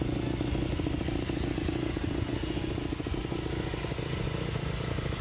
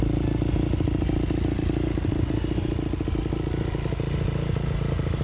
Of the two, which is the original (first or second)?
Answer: second